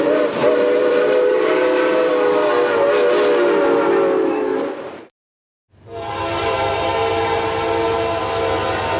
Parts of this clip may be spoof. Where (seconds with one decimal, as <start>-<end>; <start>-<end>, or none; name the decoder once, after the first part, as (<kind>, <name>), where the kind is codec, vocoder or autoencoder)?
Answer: 0.4-2.1 (vocoder, BigVGAN v2); 4.5-7.7